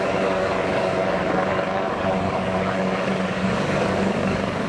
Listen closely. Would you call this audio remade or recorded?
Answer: remade